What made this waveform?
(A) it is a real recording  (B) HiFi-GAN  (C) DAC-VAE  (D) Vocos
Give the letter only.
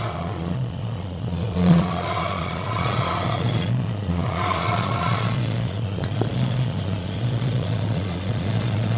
D